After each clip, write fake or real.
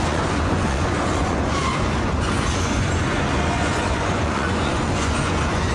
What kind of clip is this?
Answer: fake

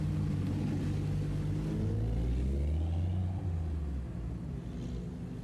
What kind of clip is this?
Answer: real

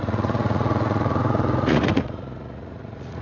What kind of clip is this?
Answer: fake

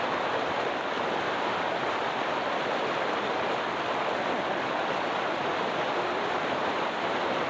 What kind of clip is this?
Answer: real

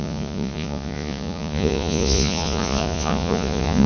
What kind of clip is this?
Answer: fake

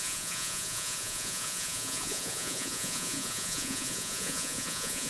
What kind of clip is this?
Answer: fake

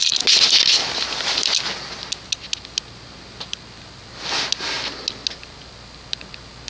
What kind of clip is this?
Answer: real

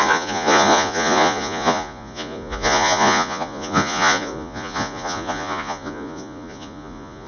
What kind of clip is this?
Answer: fake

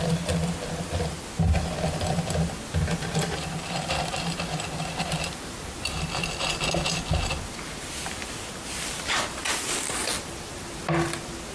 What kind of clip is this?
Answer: real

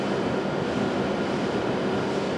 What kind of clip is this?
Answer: real